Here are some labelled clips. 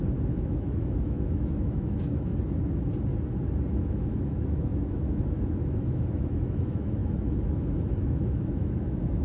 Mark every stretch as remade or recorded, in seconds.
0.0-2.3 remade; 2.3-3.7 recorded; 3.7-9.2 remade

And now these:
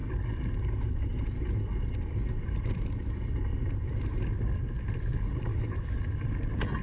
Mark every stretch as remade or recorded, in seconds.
0.0-5.5 recorded; 5.5-6.0 remade; 6.0-6.8 recorded

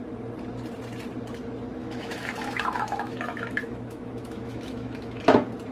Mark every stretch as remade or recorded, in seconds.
0.0-1.8 recorded; 1.8-5.2 remade; 5.2-5.7 recorded

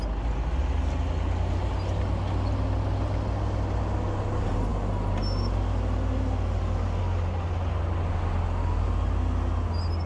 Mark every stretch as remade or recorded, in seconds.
0.0-10.1 recorded

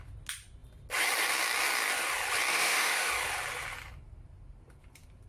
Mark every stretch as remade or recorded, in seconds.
0.0-2.5 recorded; 2.5-3.1 remade; 3.1-5.3 recorded

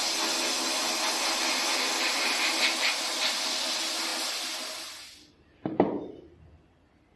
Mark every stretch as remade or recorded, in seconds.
0.0-7.2 recorded

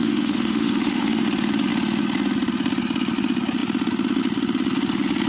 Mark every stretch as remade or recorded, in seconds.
0.0-1.2 remade; 1.2-5.3 recorded

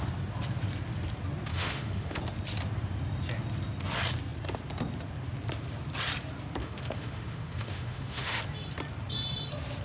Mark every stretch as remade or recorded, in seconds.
0.0-1.5 recorded; 1.5-2.2 remade; 2.2-6.6 recorded; 6.6-8.4 remade; 8.4-9.8 recorded